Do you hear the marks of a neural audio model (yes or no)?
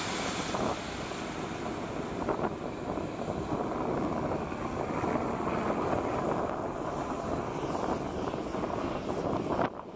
no